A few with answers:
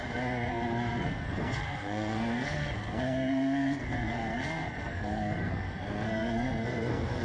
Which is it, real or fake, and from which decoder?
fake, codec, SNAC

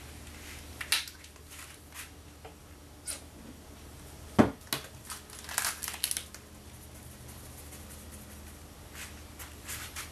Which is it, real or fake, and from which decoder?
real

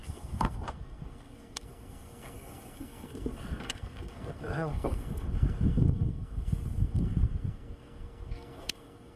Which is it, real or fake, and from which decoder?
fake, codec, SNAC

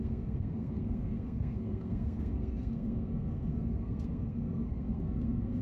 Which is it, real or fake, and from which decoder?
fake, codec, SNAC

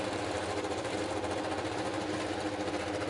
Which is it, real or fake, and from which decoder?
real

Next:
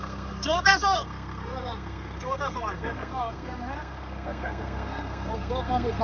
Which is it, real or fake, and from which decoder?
fake, codec, SNAC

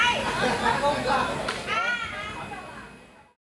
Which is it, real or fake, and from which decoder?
real